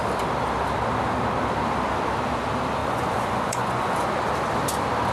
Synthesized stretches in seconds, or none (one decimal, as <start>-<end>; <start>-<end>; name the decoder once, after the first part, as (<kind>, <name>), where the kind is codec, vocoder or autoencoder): 2.8-4.1 (vocoder, Vocos)